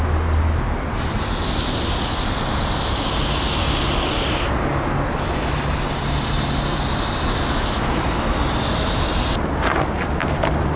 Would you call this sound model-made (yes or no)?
no